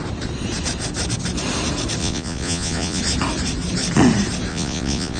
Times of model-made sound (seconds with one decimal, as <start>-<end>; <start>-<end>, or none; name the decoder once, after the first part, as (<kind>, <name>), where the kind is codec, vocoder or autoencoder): 2.0-3.0 (vocoder, Vocos); 4.5-5.2

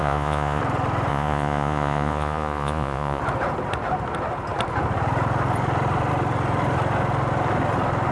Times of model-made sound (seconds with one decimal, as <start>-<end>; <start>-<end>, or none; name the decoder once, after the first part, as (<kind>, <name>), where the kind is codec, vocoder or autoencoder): 0.0-0.6 (vocoder, Vocos); 1.1-3.2

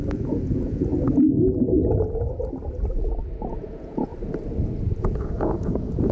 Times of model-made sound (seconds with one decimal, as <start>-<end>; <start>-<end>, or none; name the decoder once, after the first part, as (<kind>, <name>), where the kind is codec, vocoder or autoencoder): 0.0-0.9 (vocoder, Vocos); 3.5-4.1; 5.0-6.1

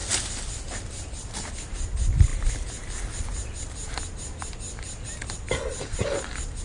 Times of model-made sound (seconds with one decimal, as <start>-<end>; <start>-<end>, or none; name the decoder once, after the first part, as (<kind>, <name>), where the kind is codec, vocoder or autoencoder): none

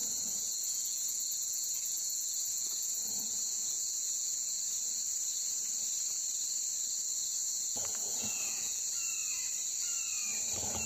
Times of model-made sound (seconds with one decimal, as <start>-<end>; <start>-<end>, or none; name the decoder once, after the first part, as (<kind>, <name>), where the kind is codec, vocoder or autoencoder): 0.0-4.6 (vocoder, Vocos); 7.4-8.8

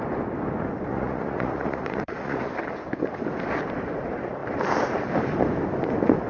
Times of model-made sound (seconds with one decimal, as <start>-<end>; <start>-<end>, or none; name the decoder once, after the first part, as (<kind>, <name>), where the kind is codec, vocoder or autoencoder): 0.9-2.5 (vocoder, Vocos)

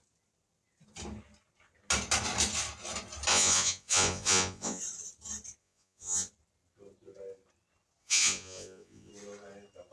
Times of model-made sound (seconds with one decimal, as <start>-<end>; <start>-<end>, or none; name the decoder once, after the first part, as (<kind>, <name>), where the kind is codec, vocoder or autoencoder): 3.3-4.8 (vocoder, Vocos); 5.6-6.3; 8.0-9.1

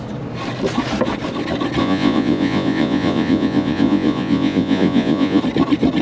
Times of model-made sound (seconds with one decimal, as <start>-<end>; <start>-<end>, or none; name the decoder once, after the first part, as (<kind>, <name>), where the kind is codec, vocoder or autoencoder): 1.8-5.4 (vocoder, Vocos)